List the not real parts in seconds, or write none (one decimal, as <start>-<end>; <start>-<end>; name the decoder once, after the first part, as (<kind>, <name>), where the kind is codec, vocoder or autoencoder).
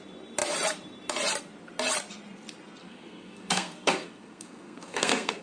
2.8-5.4 (codec, SNAC)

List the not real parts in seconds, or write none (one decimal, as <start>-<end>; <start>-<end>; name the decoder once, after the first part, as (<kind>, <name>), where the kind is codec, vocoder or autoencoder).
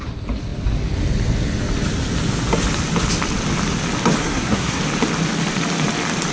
4.2-4.8 (codec, SNAC)